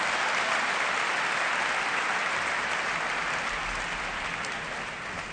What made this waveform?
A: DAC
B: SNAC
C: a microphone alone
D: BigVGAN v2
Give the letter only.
C